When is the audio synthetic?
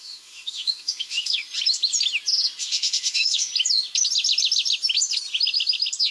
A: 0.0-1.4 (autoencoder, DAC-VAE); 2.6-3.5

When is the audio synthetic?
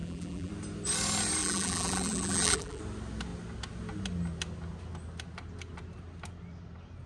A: 0.0-0.5 (vocoder, BigVGAN v2); 1.4-2.8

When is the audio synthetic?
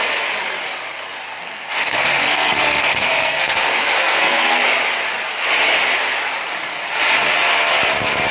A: 1.4-4.6 (codec, SNAC)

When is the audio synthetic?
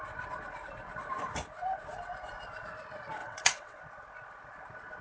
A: 3.2-3.8 (vocoder, WaveNeXt)